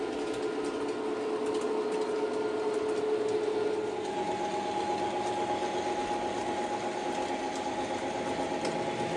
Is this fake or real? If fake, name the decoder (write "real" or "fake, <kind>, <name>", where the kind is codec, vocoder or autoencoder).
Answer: real